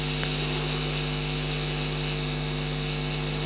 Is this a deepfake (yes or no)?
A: no